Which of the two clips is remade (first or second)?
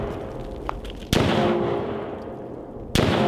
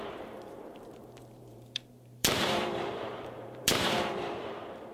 second